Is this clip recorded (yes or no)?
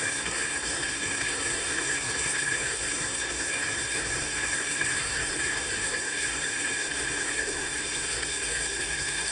no